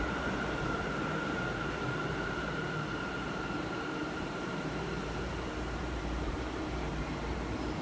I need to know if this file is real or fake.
fake